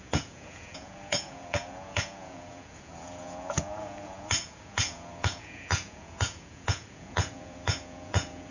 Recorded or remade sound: remade